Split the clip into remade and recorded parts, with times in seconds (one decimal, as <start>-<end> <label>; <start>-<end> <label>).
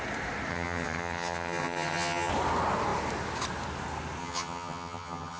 0.0-0.5 recorded; 0.5-2.3 remade; 2.3-4.2 recorded; 4.2-5.4 remade